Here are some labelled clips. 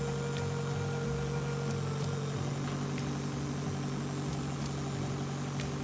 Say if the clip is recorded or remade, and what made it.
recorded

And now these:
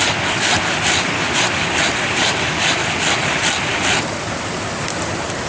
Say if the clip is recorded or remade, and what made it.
recorded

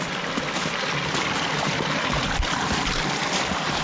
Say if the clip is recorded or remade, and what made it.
recorded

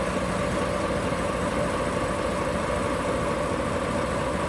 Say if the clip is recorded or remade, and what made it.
recorded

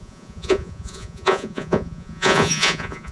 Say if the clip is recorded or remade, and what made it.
remade, vocoder, Vocos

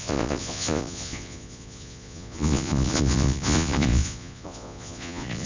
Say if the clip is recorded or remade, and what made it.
remade, vocoder, Vocos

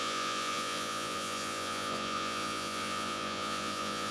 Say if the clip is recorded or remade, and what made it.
remade, vocoder, Vocos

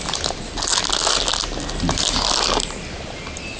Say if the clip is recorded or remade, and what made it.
recorded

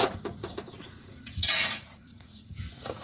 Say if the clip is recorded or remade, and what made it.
remade, vocoder, Vocos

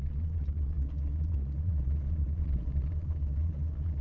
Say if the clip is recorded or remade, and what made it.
remade, vocoder, Vocos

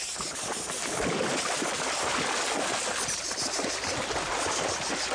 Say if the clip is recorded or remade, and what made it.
recorded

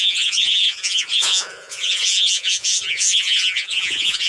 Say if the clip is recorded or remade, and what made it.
remade, vocoder, Vocos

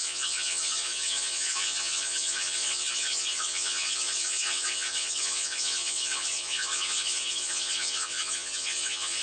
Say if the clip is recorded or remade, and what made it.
remade, vocoder, Vocos